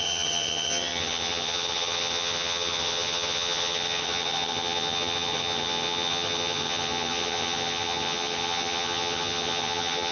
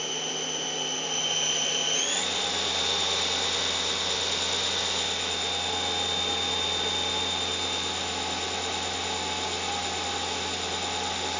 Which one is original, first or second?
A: second